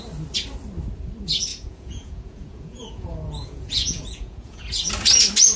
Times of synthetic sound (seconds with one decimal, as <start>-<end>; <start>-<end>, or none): 1.5-4.9